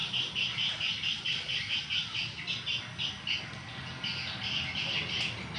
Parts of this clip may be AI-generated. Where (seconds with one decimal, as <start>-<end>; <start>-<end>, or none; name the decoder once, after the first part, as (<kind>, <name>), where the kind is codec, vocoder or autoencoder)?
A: none